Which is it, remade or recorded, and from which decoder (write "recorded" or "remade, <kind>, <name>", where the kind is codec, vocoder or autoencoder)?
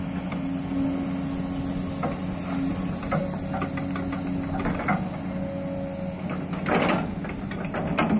recorded